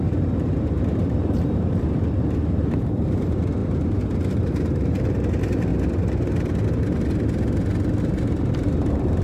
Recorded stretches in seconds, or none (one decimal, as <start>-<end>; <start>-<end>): 3.6-4.3; 5.7-8.0